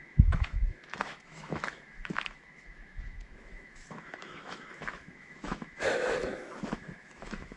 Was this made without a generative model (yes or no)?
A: no